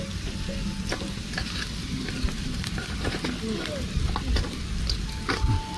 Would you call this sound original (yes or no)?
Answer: yes